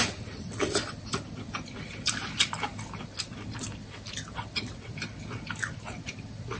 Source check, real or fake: real